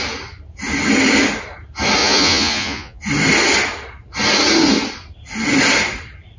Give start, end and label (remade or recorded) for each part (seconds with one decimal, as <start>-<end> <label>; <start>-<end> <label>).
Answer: 0.0-2.0 recorded; 2.0-3.0 remade; 3.0-6.4 recorded